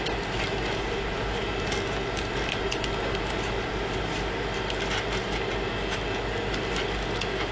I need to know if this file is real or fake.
real